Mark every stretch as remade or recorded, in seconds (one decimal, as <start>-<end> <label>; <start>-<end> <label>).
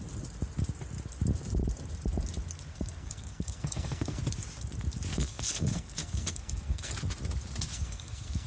0.0-2.7 recorded; 2.7-4.2 remade; 4.2-5.1 recorded; 5.1-6.9 remade; 6.9-7.7 recorded; 7.7-8.5 remade